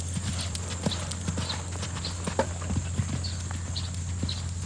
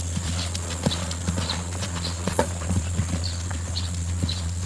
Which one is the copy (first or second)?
second